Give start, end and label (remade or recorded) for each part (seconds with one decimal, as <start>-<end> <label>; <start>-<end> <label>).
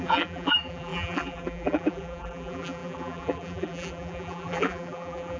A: 0.0-5.4 remade